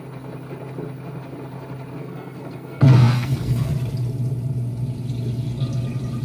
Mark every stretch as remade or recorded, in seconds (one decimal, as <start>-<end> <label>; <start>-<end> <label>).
0.0-2.0 recorded; 2.0-3.7 remade; 3.7-6.2 recorded